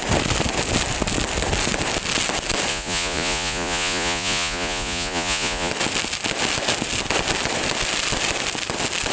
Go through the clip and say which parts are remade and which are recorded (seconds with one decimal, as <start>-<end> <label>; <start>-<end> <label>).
0.0-2.7 recorded; 2.7-5.7 remade; 5.7-9.1 recorded